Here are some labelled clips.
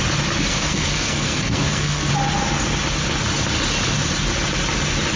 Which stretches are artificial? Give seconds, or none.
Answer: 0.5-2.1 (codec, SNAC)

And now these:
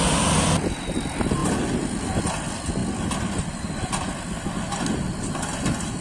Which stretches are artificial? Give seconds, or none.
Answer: 0.0-2.8 (vocoder, BigVGAN v2); 3.3-6.0

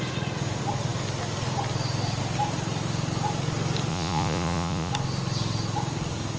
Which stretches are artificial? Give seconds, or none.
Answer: 3.9-4.9 (vocoder, Vocos)

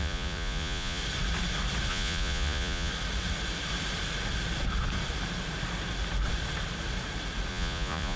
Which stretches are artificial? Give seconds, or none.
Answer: 0.0-1.0 (vocoder, Vocos); 1.9-2.9; 7.5-8.2

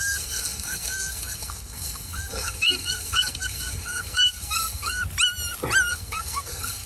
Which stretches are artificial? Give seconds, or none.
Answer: 0.0-5.0 (codec, SNAC); 5.9-6.9

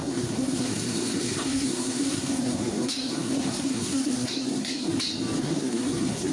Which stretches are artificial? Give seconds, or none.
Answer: 0.0-4.9 (codec, SNAC); 5.4-6.3

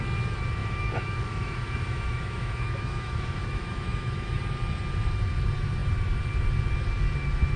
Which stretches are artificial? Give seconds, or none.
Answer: 0.6-4.4 (autoencoder, DAC-VAE)

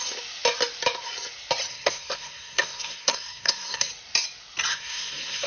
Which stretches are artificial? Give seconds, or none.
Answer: 1.7-3.9 (codec, SNAC); 4.7-5.5